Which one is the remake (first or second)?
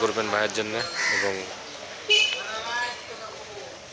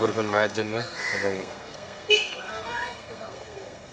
second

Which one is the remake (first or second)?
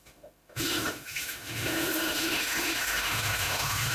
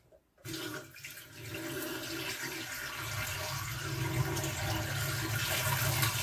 first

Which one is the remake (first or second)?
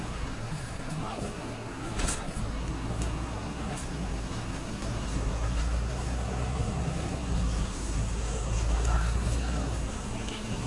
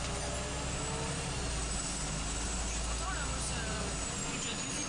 first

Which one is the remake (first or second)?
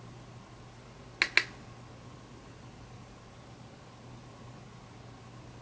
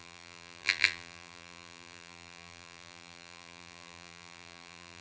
second